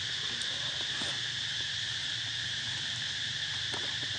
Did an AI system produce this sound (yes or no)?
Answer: no